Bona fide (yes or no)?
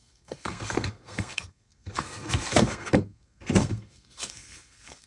no